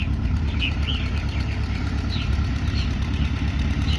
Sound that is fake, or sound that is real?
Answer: fake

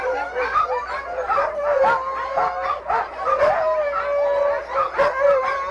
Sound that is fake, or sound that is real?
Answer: real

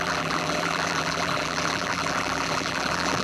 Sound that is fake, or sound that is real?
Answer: fake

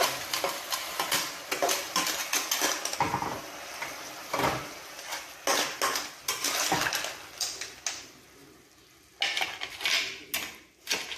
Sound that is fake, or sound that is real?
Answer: real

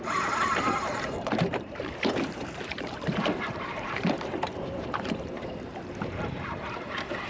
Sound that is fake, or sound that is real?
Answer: fake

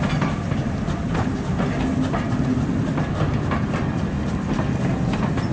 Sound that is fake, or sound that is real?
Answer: real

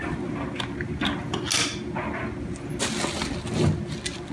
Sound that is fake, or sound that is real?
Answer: real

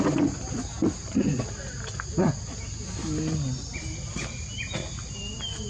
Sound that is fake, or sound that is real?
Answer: real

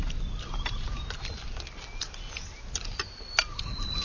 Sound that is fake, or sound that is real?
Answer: real